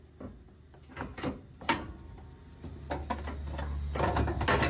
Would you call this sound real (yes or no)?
yes